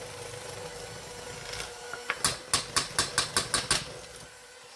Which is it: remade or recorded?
recorded